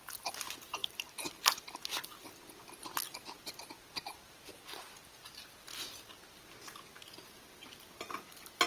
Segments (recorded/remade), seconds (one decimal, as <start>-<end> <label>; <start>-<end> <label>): 0.0-0.8 recorded; 0.8-1.8 remade; 1.8-8.7 recorded